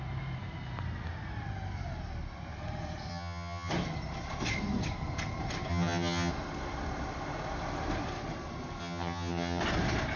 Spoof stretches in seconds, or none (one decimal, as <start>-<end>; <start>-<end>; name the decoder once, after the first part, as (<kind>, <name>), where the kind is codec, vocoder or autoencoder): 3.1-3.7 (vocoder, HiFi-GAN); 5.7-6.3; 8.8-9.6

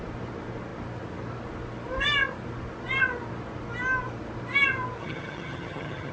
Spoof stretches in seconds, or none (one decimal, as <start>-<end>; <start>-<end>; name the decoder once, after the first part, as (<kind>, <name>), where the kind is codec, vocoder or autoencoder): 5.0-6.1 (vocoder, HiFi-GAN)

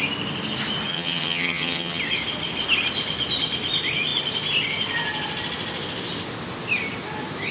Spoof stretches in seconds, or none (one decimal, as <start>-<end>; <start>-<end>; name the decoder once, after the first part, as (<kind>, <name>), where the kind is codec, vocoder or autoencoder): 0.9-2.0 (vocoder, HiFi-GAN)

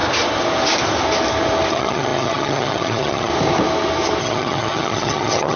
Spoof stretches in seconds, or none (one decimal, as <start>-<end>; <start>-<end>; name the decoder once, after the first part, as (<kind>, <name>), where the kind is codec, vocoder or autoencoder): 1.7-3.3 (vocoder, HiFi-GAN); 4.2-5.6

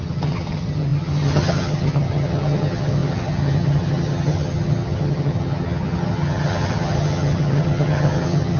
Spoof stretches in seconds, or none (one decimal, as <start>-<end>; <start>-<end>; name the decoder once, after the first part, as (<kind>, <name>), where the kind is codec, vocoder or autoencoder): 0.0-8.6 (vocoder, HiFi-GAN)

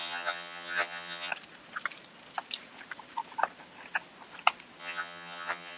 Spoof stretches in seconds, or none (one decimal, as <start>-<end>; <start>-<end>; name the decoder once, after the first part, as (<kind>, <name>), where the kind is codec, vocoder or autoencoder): 0.0-1.3 (vocoder, HiFi-GAN); 4.8-5.8

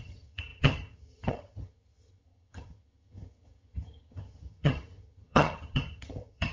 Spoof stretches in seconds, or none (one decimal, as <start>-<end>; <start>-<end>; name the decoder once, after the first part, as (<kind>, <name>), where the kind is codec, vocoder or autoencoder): 0.0-6.5 (vocoder, HiFi-GAN)